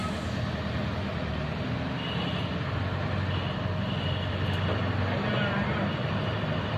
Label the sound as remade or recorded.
recorded